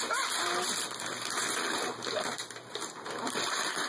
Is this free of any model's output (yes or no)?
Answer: no